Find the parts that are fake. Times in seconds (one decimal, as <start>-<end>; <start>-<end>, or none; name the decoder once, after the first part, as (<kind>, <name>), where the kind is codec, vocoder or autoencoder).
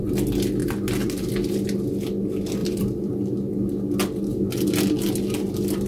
0.6-1.3 (vocoder, BigVGAN v2); 2.6-3.1